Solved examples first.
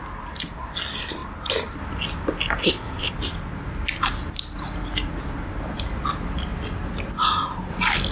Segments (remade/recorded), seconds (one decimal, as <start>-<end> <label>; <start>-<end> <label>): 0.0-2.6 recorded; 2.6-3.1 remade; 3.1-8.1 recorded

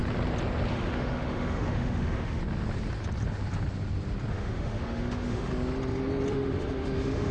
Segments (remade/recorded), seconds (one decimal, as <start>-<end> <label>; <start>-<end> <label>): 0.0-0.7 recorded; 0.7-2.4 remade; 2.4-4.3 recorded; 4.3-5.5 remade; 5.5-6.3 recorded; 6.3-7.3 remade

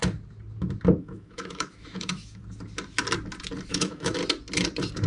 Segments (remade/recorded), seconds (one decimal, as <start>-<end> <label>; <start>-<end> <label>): 0.0-1.0 recorded; 1.0-2.4 remade; 2.4-3.7 recorded; 3.7-4.2 remade; 4.2-5.1 recorded